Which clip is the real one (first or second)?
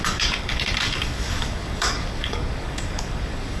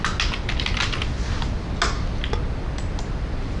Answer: second